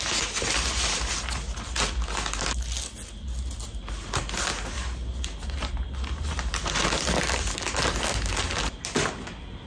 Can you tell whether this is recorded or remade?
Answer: recorded